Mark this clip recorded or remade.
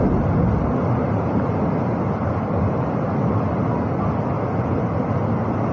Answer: recorded